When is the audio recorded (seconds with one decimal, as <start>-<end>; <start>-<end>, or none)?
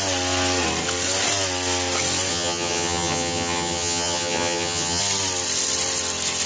0.0-2.3; 5.0-6.5